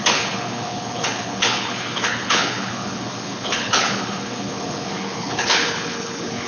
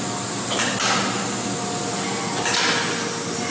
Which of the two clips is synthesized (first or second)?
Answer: first